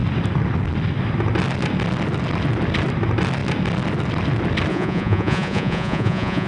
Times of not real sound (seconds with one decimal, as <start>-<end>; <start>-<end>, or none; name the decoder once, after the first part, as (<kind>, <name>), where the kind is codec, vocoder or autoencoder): 4.7-6.5 (vocoder, Vocos)